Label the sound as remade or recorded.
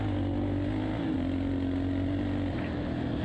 recorded